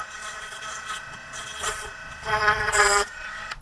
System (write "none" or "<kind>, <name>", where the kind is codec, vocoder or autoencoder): vocoder, Vocos